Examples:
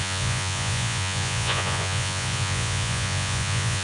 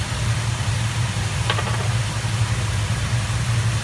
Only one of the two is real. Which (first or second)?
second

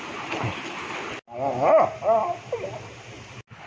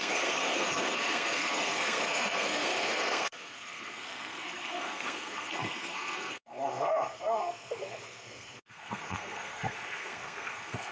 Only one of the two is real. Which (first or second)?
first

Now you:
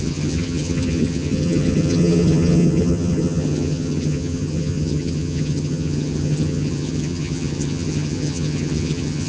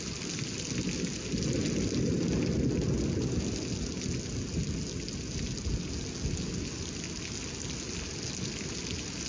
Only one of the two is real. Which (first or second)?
second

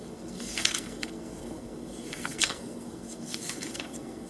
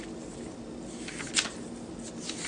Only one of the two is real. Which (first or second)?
second